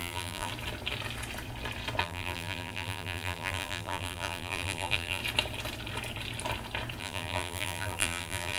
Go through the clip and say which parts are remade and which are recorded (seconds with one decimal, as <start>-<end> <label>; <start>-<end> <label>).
0.0-0.5 remade; 0.5-2.0 recorded; 2.0-5.2 remade; 5.2-7.0 recorded; 7.0-8.6 remade